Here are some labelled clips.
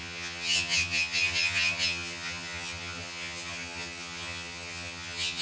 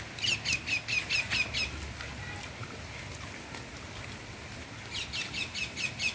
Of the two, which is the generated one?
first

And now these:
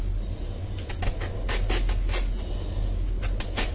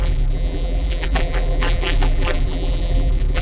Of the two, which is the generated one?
second